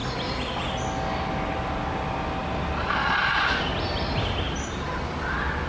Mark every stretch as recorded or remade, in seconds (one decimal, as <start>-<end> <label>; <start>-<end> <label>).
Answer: 0.0-5.7 recorded